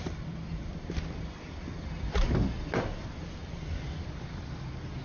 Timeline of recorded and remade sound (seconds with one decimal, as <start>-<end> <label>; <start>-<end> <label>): 0.0-5.0 recorded